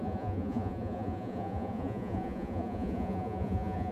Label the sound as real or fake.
fake